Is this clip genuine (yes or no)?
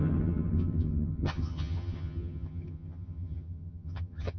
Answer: no